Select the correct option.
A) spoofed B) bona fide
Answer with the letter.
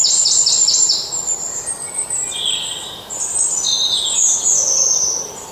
B